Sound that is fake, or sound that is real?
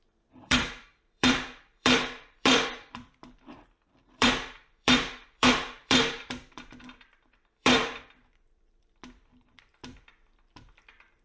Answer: fake